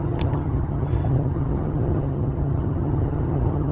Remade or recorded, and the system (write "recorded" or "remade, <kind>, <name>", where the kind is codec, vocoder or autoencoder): remade, vocoder, HiFi-GAN